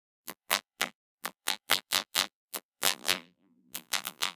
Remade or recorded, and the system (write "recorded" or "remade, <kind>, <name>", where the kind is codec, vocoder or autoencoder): remade, vocoder, BigVGAN v2